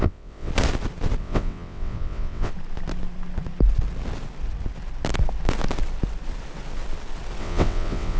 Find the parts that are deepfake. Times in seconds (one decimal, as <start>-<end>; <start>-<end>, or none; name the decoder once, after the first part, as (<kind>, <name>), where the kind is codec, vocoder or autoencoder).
0.0-0.5 (vocoder, WaveNeXt); 1.2-2.5; 7.4-8.2